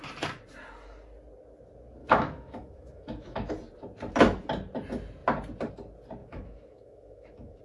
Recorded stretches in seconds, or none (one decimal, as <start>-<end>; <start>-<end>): 0.0-2.0; 3.5-6.2